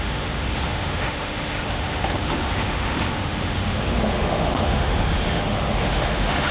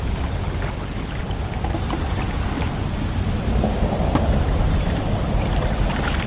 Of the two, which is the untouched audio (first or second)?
second